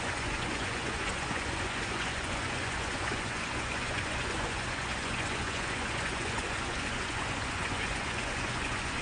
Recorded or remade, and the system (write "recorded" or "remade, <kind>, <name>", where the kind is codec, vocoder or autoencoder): remade, vocoder, Vocos